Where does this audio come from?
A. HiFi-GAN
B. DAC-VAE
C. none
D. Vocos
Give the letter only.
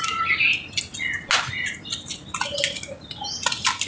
C